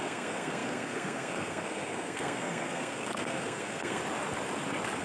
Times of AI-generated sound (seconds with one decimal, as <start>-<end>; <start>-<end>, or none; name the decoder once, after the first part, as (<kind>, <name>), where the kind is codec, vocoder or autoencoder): 0.0-4.0 (codec, SNAC)